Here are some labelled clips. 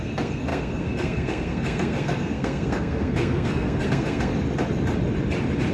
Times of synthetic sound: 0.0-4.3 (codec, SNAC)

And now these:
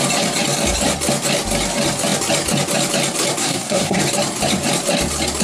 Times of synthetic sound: 3.4-4.0 (codec, SNAC)

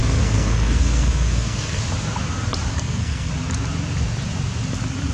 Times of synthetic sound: 0.0-1.8 (codec, SNAC); 2.7-3.3

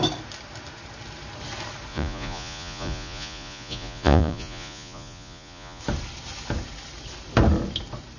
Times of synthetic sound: 1.9-5.8 (vocoder, Vocos)

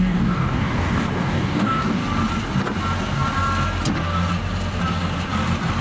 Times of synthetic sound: 0.0-2.0 (codec, DAC)